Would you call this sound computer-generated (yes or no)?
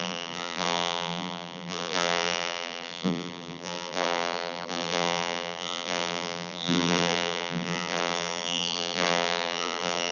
yes